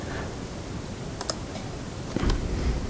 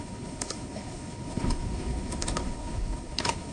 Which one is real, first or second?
first